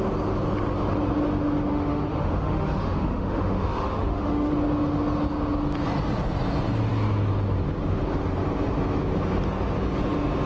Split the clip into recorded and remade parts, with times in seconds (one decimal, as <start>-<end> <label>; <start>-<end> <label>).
0.0-1.7 recorded; 1.7-4.5 remade; 4.5-10.5 recorded